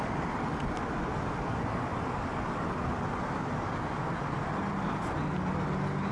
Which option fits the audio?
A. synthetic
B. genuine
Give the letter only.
B